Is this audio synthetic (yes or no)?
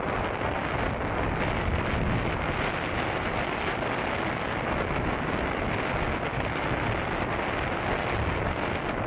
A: no